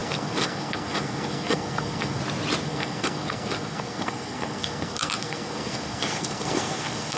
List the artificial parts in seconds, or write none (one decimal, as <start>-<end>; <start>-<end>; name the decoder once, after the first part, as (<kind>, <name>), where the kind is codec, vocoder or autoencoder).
0.0-2.2 (codec, SNAC); 2.6-7.2